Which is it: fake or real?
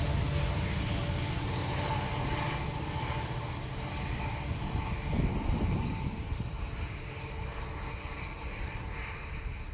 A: real